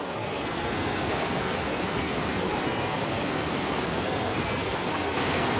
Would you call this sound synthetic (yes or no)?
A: yes